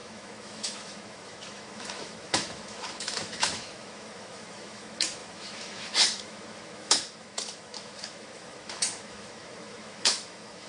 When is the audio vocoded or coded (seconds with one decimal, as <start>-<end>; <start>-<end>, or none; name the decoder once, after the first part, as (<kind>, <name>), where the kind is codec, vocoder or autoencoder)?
0.0-10.7 (autoencoder, DAC-VAE)